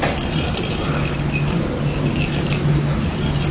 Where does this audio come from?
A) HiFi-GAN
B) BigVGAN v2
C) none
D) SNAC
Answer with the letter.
C